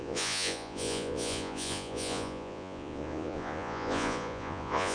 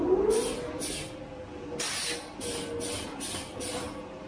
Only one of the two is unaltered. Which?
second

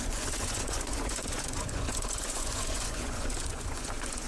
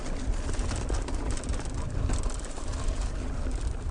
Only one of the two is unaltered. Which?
second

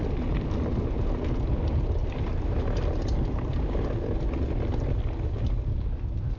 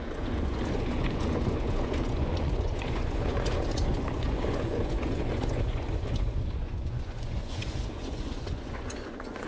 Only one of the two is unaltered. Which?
first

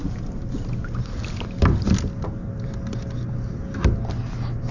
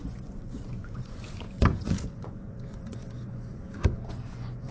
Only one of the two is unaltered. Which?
first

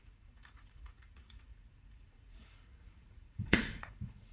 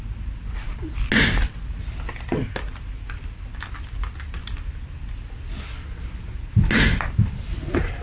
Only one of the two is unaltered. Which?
second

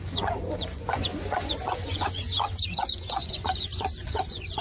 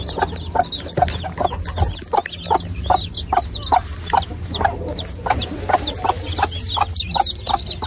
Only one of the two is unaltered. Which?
second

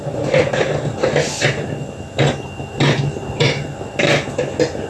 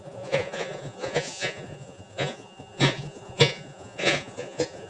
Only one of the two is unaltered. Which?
first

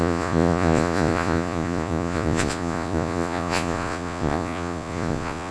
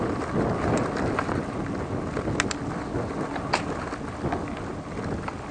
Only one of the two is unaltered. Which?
second